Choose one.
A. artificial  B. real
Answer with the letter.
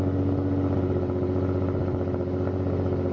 B